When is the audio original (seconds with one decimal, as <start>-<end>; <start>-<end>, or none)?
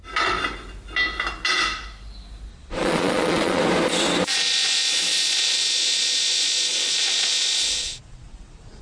0.0-2.5; 3.6-4.3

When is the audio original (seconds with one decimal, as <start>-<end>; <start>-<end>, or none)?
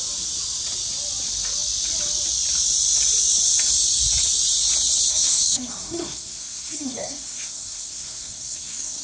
0.0-5.1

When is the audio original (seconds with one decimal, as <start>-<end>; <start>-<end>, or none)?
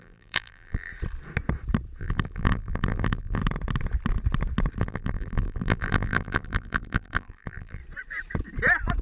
0.9-2.0; 3.4-4.8; 7.8-9.0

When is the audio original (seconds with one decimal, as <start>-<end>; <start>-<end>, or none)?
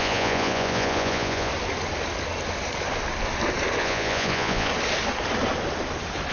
1.5-3.8; 4.7-6.3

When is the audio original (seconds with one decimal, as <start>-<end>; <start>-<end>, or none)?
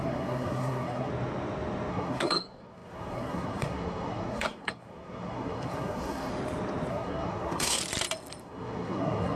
1.1-1.9; 6.3-6.9; 7.8-8.4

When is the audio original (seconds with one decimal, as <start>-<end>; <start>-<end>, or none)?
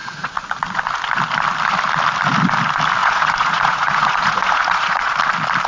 0.8-3.0; 5.1-5.7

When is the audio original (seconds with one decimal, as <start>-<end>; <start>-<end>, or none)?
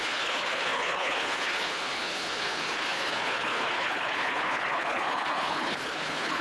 none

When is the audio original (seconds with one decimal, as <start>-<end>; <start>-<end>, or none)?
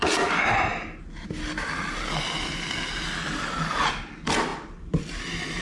0.0-4.5; 5.0-5.6